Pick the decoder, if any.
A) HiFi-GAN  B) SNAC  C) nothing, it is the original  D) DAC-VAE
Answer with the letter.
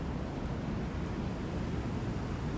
C